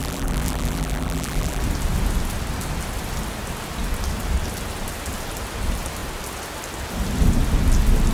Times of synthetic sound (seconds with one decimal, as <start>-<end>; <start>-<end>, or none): 0.0-1.6